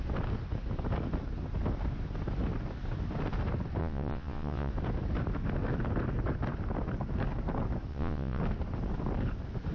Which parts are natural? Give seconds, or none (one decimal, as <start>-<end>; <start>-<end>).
0.0-3.8; 4.7-7.9; 8.4-9.7